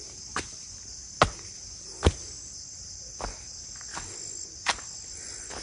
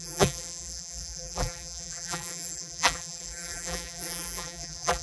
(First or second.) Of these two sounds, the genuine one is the first